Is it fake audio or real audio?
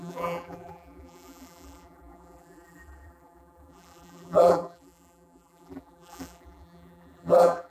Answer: fake